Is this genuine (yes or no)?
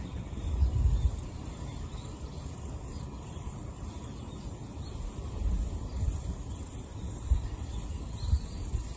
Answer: yes